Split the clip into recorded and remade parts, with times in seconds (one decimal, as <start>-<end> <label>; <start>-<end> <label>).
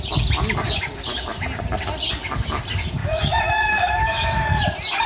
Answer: 0.0-3.0 recorded; 3.0-4.6 remade; 4.6-5.1 recorded